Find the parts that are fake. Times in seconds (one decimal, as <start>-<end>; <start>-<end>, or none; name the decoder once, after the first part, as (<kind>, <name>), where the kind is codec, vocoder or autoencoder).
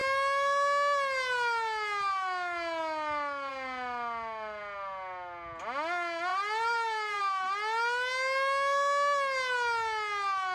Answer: 6.3-7.2 (vocoder, BigVGAN v2)